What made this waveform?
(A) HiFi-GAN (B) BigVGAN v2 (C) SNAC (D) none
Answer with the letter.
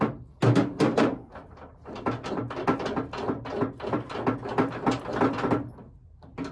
D